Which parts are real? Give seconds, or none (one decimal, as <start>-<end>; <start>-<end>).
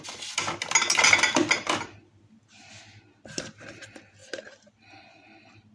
0.0-5.7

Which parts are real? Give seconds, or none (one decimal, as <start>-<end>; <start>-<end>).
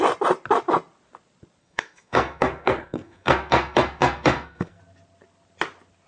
0.0-1.6; 4.8-6.1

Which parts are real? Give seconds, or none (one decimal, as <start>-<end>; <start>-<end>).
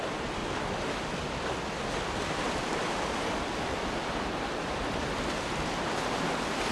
0.0-0.4; 4.1-6.7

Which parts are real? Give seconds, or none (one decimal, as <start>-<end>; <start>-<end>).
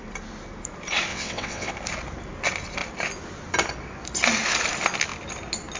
0.0-1.1; 1.7-5.8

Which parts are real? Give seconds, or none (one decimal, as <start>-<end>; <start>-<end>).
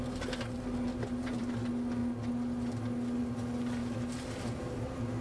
0.0-0.9; 1.5-5.2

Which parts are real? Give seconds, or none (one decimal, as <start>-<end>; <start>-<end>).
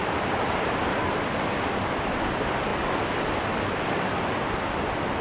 0.0-5.2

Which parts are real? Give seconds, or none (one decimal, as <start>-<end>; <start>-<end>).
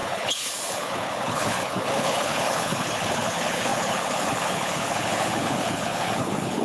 none